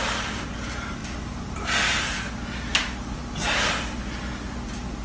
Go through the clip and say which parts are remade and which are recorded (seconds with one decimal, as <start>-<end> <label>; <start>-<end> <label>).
0.0-5.0 recorded